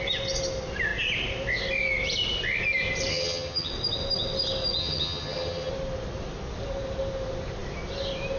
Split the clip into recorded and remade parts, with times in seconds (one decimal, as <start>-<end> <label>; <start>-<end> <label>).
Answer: 0.0-3.1 recorded; 3.1-3.7 remade; 3.7-4.8 recorded; 4.8-5.7 remade; 5.7-8.4 recorded